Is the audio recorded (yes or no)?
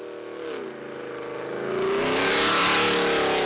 yes